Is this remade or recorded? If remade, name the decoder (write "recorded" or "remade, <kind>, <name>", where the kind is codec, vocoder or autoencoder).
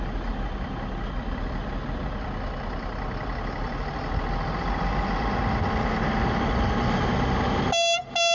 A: recorded